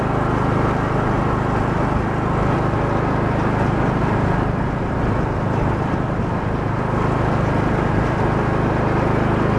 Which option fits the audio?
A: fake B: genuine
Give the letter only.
B